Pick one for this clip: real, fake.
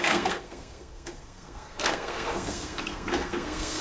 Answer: fake